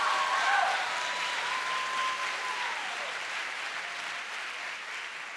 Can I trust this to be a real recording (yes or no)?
yes